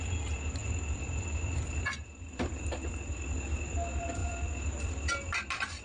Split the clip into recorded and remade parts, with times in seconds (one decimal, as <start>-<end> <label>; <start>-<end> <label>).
0.0-5.8 recorded